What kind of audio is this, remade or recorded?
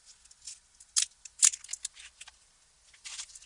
recorded